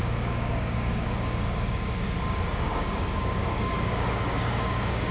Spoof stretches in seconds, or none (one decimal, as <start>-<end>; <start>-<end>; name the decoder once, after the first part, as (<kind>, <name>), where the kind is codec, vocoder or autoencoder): 0.0-5.1 (codec, DAC)